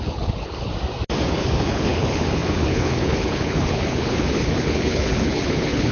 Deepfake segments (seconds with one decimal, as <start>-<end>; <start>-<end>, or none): 0.0-0.7; 1.3-5.9